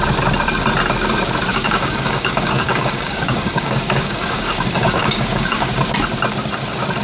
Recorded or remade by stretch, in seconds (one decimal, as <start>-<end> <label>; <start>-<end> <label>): 0.0-1.5 recorded; 1.5-5.7 remade; 5.7-7.0 recorded